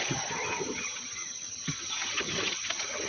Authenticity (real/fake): fake